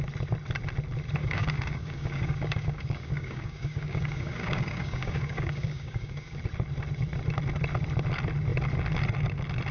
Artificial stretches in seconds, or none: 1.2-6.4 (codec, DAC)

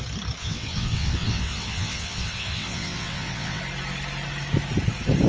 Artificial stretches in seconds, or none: 0.4-3.6 (vocoder, WaveNeXt)

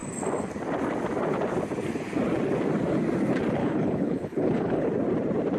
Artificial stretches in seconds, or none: 3.6-4.9 (codec, HILCodec)